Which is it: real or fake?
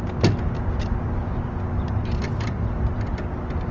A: real